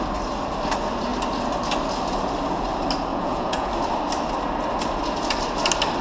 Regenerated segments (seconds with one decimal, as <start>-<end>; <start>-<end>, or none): 3.1-3.7